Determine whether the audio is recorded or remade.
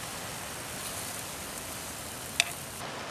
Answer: recorded